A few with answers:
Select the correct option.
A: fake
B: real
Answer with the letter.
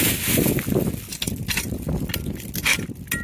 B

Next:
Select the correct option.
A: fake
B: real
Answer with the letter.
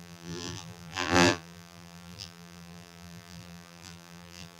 A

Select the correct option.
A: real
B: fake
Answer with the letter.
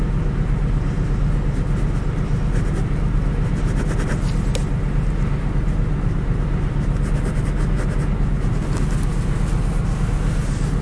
A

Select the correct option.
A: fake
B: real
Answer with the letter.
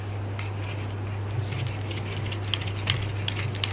B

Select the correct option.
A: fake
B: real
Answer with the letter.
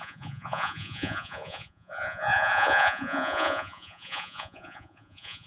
A